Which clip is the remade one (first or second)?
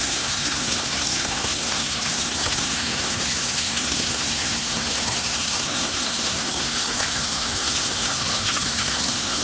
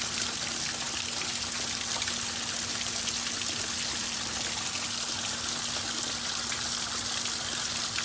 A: first